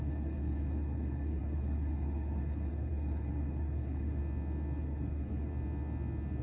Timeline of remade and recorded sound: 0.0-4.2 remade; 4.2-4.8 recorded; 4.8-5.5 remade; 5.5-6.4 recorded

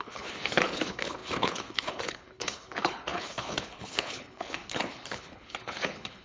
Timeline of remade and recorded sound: 0.0-6.2 remade

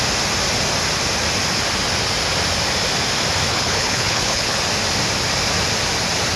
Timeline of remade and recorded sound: 0.0-3.5 recorded; 3.5-4.6 remade; 4.6-6.4 recorded

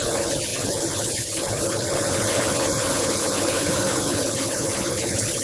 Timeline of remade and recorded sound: 0.0-5.4 remade

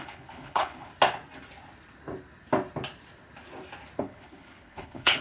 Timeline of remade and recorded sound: 0.0-0.9 remade; 0.9-4.0 recorded; 4.0-5.2 remade

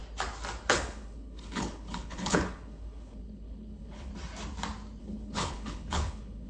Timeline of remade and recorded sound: 0.0-0.7 recorded; 0.7-4.1 remade; 4.1-5.0 recorded; 5.0-6.5 remade

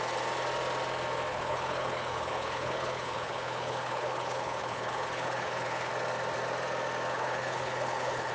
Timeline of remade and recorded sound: 0.0-1.3 recorded; 1.3-5.9 remade; 5.9-7.1 recorded; 7.1-8.3 remade